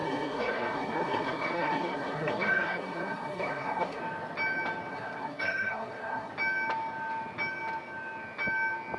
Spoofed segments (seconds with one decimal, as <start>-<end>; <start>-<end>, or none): 0.0-4.0; 4.9-6.3